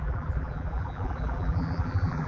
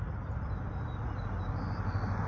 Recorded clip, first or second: second